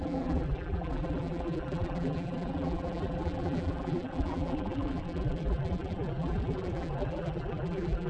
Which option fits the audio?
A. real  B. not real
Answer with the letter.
B